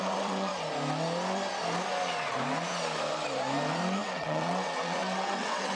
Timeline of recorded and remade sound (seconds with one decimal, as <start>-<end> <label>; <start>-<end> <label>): 0.0-0.5 remade; 0.5-4.0 recorded; 4.0-5.8 remade